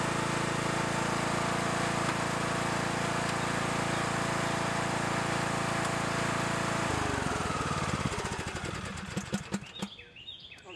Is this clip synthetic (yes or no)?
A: no